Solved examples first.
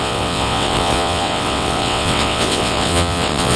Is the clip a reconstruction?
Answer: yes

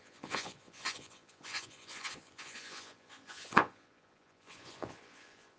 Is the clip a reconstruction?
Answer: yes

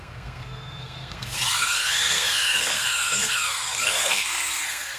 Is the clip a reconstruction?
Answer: yes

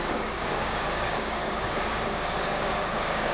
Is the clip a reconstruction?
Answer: yes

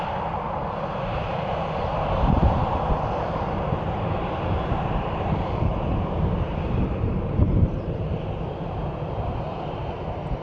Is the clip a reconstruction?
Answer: yes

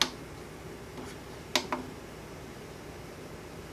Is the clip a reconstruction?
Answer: no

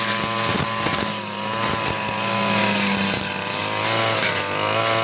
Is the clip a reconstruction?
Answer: no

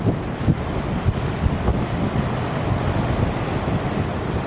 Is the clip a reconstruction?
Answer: no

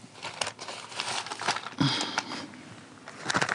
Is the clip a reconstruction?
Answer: no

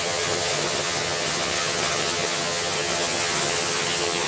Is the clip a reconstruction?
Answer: yes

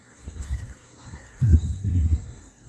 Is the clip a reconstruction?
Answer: yes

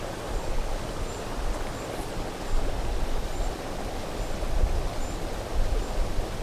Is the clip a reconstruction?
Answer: no